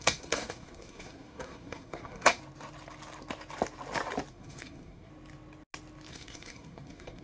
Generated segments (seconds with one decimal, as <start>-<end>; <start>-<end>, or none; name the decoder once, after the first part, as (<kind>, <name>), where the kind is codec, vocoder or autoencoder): 0.0-2.4 (codec, SNAC); 4.3-5.1; 6.1-7.2